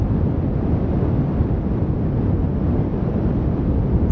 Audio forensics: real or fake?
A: fake